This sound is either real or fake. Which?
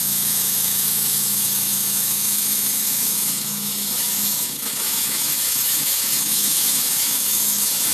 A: fake